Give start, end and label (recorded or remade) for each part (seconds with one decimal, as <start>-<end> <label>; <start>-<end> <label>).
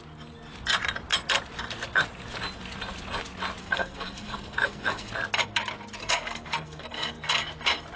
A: 0.0-3.6 recorded; 3.6-5.1 remade; 5.1-6.0 recorded; 6.0-7.4 remade; 7.4-8.0 recorded